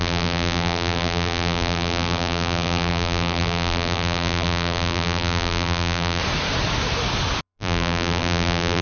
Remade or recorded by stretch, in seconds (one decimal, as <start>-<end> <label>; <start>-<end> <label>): 0.0-6.2 remade; 6.2-7.4 recorded; 7.4-8.8 remade